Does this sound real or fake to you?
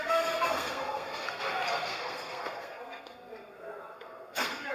fake